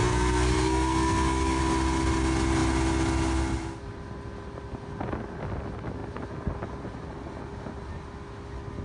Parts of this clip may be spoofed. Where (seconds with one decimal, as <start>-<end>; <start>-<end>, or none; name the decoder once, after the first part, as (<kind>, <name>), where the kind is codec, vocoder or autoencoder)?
0.0-1.6 (codec, SNAC)